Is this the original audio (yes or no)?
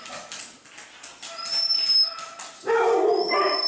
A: yes